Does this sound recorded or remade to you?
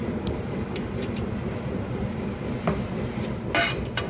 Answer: recorded